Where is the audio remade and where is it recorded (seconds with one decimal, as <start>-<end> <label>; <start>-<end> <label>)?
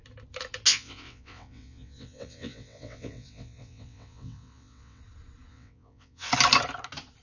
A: 0.0-0.7 recorded; 0.7-5.0 remade; 5.0-5.5 recorded; 5.5-6.3 remade; 6.3-7.2 recorded